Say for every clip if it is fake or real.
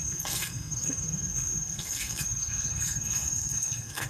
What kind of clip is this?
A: fake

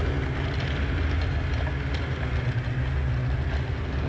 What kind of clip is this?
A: real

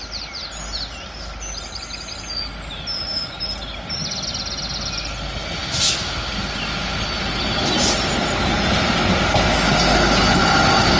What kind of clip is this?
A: real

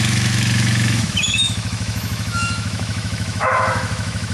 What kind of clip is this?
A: fake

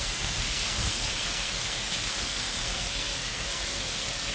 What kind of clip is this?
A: fake